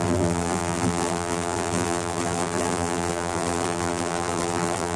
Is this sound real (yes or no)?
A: no